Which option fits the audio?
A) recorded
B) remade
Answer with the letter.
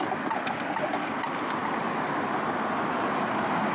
A